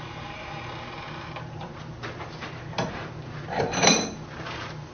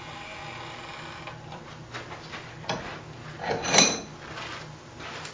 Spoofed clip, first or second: first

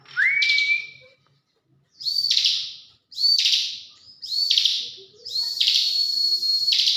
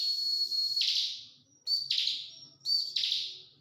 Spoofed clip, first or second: first